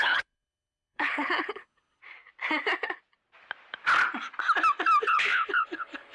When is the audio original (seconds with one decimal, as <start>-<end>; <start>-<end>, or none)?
2.0-5.0